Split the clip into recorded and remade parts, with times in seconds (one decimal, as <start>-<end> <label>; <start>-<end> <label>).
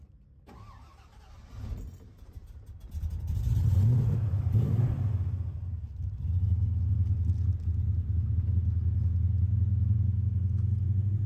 0.0-3.6 recorded; 3.6-5.1 remade; 5.1-11.3 recorded